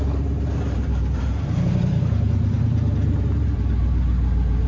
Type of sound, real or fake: fake